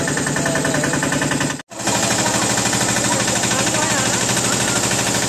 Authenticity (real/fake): real